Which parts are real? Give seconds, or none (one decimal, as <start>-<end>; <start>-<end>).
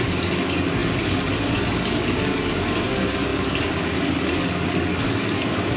none